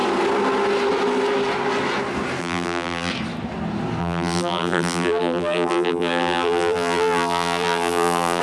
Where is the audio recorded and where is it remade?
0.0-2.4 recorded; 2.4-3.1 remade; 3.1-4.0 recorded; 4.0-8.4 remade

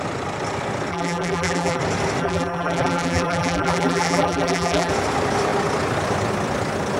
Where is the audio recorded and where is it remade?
0.0-0.9 recorded; 0.9-1.8 remade; 1.8-2.2 recorded; 2.2-4.9 remade; 4.9-7.0 recorded

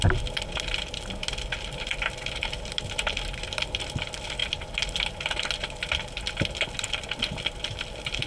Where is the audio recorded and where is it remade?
0.0-8.3 recorded

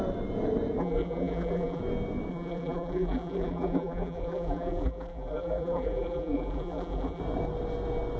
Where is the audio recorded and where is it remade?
0.0-0.8 recorded; 0.8-1.8 remade; 1.8-2.3 recorded; 2.3-7.2 remade; 7.2-8.2 recorded